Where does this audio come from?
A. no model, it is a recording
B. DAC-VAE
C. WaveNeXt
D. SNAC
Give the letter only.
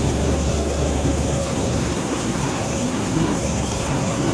D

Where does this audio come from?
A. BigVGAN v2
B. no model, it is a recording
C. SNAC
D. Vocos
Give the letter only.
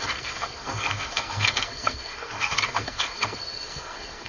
C